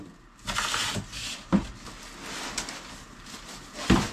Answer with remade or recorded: recorded